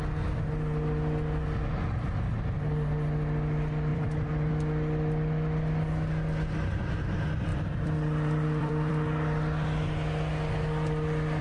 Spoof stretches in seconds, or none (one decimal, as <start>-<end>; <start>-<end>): 3.9-4.5; 7.5-8.9